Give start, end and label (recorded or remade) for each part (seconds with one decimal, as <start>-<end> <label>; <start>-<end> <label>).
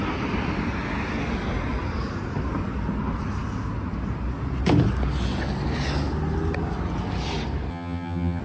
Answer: 0.0-7.7 recorded; 7.7-8.4 remade